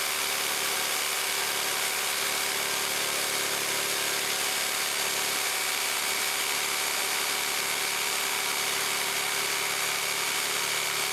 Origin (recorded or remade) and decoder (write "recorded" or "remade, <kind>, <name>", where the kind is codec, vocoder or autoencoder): recorded